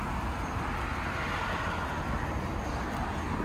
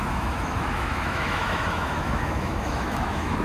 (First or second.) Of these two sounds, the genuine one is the first